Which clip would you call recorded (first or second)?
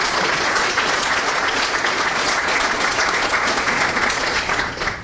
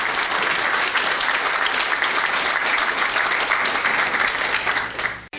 second